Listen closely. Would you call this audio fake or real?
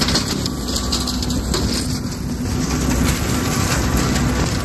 real